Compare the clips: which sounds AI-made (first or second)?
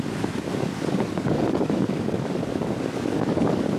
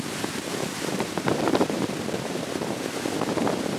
first